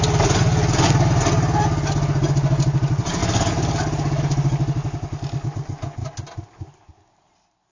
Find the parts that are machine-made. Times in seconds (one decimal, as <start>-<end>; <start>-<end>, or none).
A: none